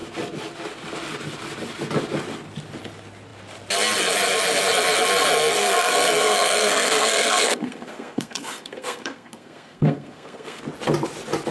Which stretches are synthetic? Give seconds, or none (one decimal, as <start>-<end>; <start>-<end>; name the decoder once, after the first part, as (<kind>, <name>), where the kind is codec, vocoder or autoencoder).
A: 5.6-10.6 (codec, SNAC)